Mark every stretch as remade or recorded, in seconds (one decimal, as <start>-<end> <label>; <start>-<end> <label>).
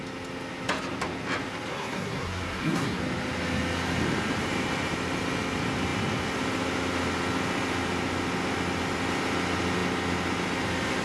0.0-1.7 recorded; 1.7-3.0 remade; 3.0-11.0 recorded